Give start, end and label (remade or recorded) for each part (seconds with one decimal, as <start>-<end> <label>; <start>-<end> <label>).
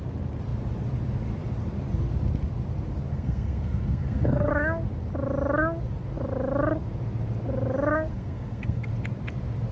0.0-3.1 recorded; 3.1-4.5 remade; 4.5-8.1 recorded; 8.1-8.9 remade; 8.9-9.7 recorded